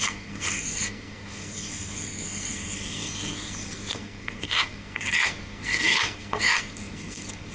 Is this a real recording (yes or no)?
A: no